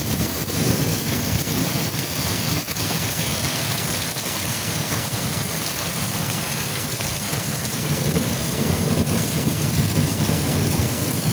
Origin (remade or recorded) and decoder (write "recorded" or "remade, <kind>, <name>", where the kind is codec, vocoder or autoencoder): remade, codec, SNAC